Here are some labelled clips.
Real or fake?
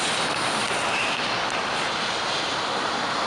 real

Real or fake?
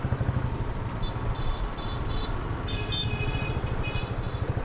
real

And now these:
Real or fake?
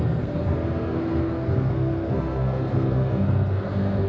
fake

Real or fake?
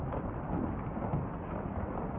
real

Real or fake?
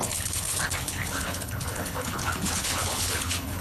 fake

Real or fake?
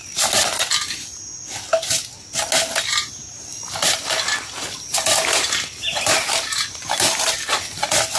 real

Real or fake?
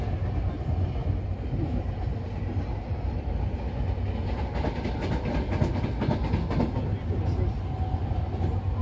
real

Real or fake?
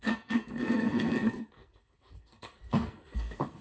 fake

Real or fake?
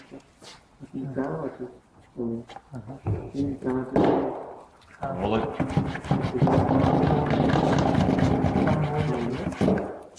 real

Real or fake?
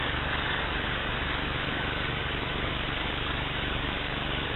fake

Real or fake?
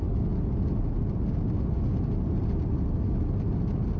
real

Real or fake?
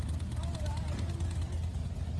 real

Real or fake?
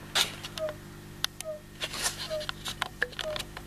real